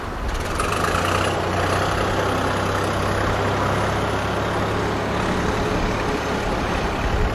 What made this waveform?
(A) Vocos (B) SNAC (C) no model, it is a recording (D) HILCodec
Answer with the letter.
C